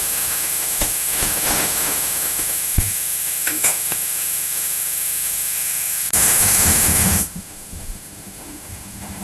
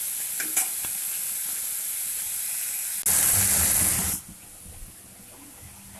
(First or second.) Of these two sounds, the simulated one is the first